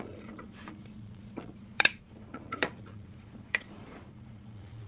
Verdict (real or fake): fake